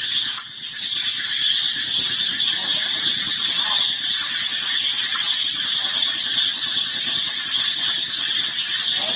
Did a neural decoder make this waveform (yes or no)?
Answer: yes